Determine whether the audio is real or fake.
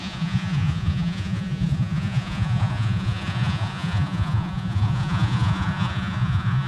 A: fake